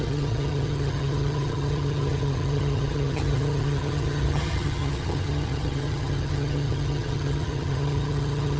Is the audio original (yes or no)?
no